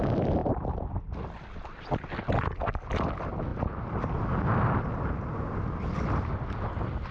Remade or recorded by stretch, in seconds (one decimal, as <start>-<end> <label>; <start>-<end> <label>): 0.0-7.1 recorded